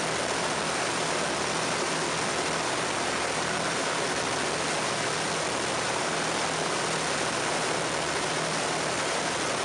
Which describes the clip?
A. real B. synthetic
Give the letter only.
A